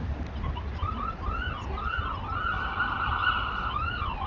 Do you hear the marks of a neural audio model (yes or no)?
no